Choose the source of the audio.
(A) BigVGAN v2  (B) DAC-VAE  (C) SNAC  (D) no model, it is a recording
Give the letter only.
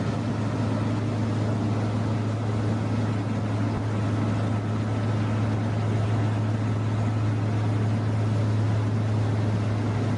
D